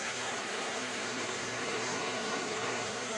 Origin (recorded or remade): remade